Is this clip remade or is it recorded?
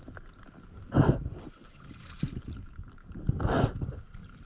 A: recorded